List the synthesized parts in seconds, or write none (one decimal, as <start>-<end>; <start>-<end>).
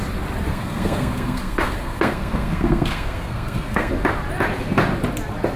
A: 0.5-3.9